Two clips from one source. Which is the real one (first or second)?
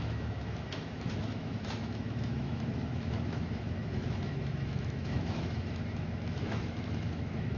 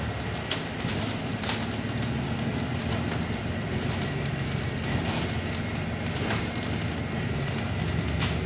second